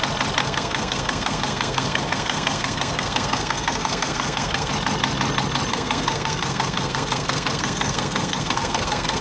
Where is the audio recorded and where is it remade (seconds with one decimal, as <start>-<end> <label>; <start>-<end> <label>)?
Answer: 0.0-0.4 recorded; 0.4-4.7 remade; 4.7-5.7 recorded; 5.7-9.2 remade